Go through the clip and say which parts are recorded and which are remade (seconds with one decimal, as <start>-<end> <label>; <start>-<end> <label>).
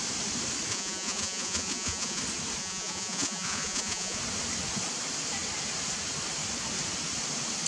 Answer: 0.0-0.7 recorded; 0.7-2.2 remade; 2.2-2.6 recorded; 2.6-4.2 remade; 4.2-7.7 recorded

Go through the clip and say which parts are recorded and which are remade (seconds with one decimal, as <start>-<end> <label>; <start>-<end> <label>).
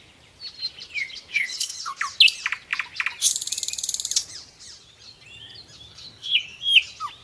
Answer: 0.0-1.3 recorded; 1.3-1.9 remade; 1.9-5.9 recorded; 5.9-6.6 remade; 6.6-7.2 recorded